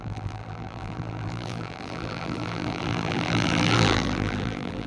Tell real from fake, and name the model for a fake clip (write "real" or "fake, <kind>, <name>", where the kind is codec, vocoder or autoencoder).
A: fake, vocoder, BigVGAN v2